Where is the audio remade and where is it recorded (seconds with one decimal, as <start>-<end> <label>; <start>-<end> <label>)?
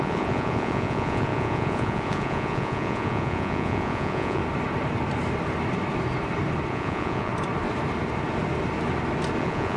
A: 0.0-4.4 remade; 4.4-6.7 recorded; 6.7-7.3 remade; 7.3-9.4 recorded; 9.4-9.8 remade